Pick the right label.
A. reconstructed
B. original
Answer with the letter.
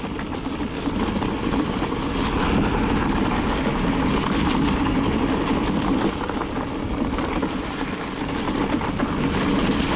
B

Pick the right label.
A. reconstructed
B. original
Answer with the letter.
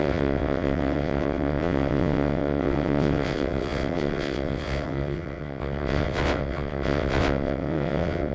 A